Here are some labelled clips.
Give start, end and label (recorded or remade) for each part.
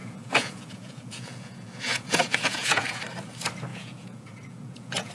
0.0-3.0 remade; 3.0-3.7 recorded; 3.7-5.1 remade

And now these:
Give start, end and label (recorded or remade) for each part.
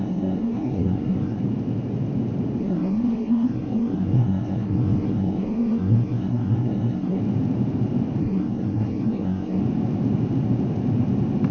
0.0-1.4 remade; 1.4-2.6 recorded; 2.6-7.2 remade; 7.2-8.2 recorded; 8.2-9.6 remade; 9.6-11.5 recorded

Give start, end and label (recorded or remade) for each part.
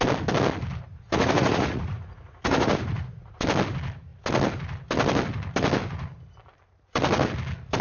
0.0-0.9 recorded; 0.9-3.4 remade; 3.4-7.8 recorded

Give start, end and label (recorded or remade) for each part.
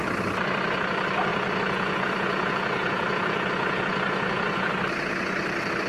0.0-1.3 recorded; 1.3-4.7 remade; 4.7-5.9 recorded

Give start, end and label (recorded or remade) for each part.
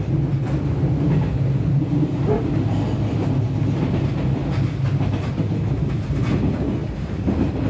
0.0-6.8 recorded; 6.8-7.7 remade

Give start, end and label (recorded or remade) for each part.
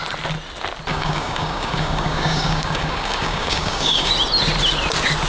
0.0-0.9 recorded; 0.9-4.1 remade; 4.1-5.3 recorded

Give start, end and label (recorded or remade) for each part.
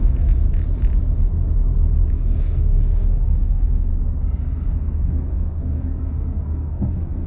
0.0-0.4 remade; 0.4-2.1 recorded; 2.1-3.9 remade; 3.9-4.4 recorded; 4.4-7.3 remade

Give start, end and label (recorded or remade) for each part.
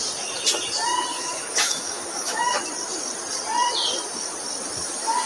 0.0-1.1 recorded; 1.1-2.6 remade; 2.6-5.3 recorded